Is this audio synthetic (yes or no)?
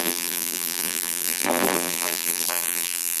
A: yes